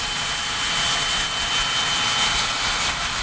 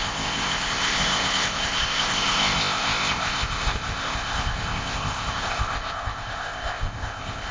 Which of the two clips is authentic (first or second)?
first